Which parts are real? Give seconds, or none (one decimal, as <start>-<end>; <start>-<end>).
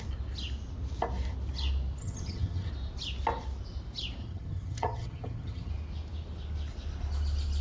0.0-2.0; 2.7-4.2; 5.7-7.6